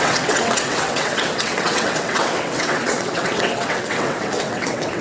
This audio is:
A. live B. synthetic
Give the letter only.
B